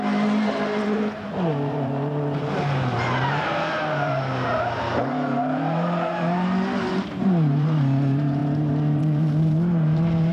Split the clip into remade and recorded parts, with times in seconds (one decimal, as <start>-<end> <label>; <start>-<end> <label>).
0.0-10.3 remade